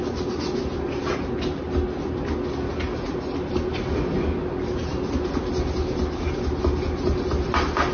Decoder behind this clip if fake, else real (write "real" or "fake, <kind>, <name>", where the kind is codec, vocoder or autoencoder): real